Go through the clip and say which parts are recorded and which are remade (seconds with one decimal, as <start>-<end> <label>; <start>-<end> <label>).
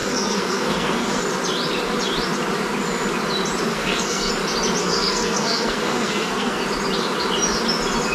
0.0-1.2 remade; 1.2-3.7 recorded; 3.7-4.3 remade; 4.3-4.8 recorded; 4.8-6.6 remade; 6.6-8.1 recorded